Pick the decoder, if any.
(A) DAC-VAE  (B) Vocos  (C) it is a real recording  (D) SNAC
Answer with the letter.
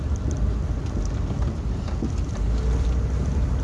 C